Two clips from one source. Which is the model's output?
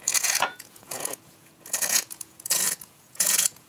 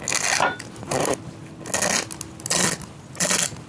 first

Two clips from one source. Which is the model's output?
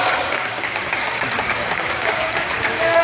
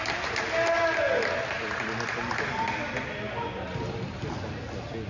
first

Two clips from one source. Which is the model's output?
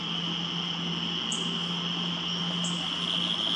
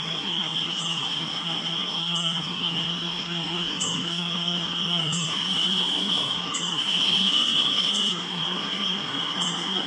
second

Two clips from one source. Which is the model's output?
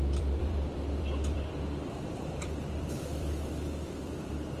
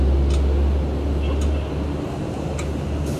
first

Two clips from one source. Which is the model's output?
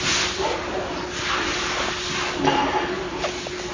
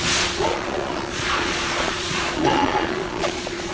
second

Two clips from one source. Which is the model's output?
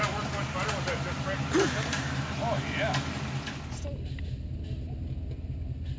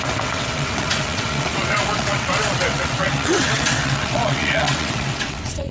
second